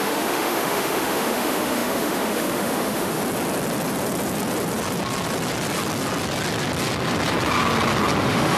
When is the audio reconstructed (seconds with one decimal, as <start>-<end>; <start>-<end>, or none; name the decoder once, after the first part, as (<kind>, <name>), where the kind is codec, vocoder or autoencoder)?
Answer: 0.0-3.2 (autoencoder, DAC-VAE); 8.2-8.6